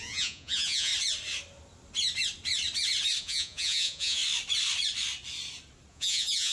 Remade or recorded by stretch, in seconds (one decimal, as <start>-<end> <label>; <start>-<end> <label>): 0.0-0.9 remade; 0.9-3.2 recorded; 3.2-4.2 remade; 4.2-5.9 recorded; 5.9-6.5 remade